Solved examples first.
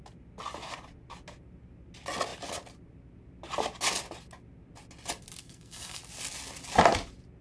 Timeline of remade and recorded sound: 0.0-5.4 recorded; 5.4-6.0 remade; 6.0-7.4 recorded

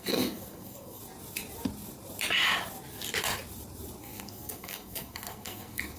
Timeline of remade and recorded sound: 0.0-1.0 remade; 1.0-4.0 recorded; 4.0-6.0 remade

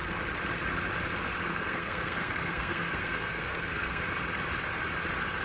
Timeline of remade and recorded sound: 0.0-1.5 recorded; 1.5-4.0 remade; 4.0-5.4 recorded

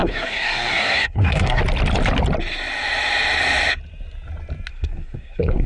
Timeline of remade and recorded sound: 0.0-1.6 remade; 1.6-4.7 recorded; 4.7-5.7 remade

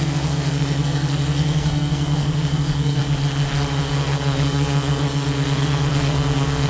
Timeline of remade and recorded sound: 0.0-3.0 remade; 3.0-3.8 recorded; 3.8-6.7 remade

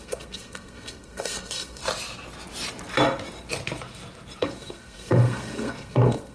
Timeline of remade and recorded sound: 0.0-1.8 remade; 1.8-4.4 recorded; 4.4-6.3 remade

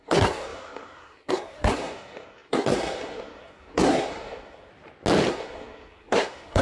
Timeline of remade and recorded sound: 0.0-4.7 remade; 4.7-5.3 recorded; 5.3-6.6 remade

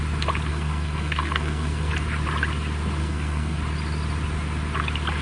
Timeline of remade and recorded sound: 0.0-0.5 recorded; 0.5-1.9 remade; 1.9-3.0 recorded; 3.0-3.6 remade; 3.6-5.2 recorded